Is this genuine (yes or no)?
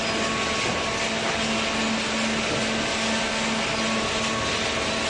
yes